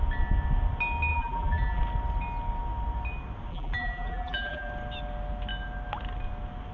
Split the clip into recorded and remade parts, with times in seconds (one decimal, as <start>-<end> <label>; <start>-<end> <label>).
0.0-1.1 recorded; 1.1-1.8 remade; 1.8-3.5 recorded; 3.5-4.7 remade; 4.7-6.7 recorded